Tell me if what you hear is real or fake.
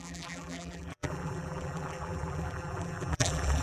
fake